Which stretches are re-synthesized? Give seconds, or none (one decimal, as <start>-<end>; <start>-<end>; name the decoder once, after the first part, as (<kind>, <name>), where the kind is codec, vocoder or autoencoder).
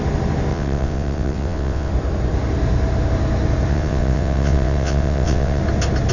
0.5-1.9 (vocoder, WaveNeXt); 3.7-5.6